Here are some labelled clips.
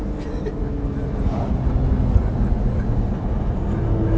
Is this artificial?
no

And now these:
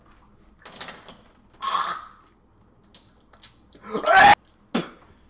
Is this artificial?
no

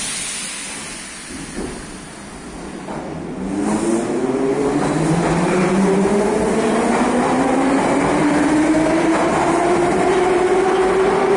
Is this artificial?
no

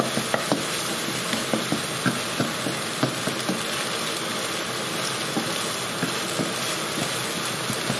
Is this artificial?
no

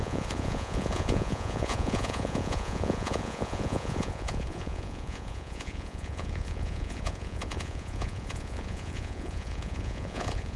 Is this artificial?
yes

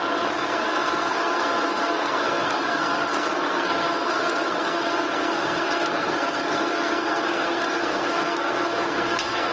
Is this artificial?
yes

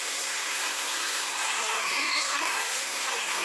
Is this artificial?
yes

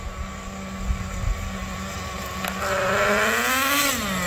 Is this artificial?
no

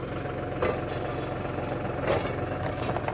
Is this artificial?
no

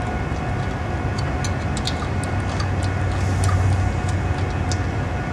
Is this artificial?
no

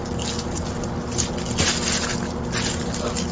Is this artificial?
no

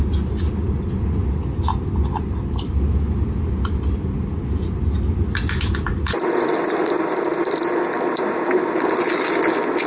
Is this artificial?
no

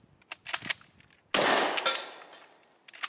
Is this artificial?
no